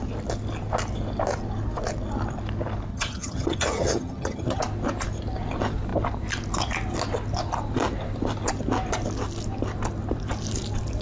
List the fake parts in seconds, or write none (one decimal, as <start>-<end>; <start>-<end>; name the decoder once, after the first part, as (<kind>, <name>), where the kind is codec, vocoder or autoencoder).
2.9-4.6 (vocoder, HiFi-GAN)